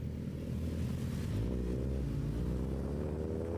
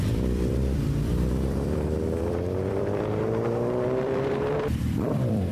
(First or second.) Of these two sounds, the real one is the first